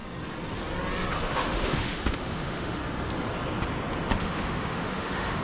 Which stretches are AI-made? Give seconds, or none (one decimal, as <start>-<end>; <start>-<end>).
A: 1.1-2.8; 4.2-5.4